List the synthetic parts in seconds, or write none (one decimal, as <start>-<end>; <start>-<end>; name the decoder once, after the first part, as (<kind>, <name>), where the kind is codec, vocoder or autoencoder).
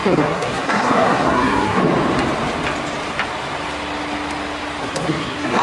0.0-1.8 (codec, SNAC); 4.8-5.6